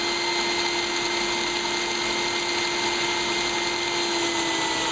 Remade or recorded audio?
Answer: recorded